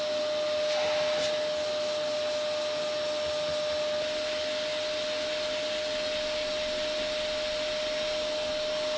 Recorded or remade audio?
recorded